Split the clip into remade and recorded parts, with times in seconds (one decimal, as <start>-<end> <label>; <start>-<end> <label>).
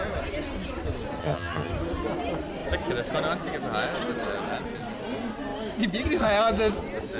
0.0-1.2 recorded; 1.2-1.7 remade; 1.7-7.2 recorded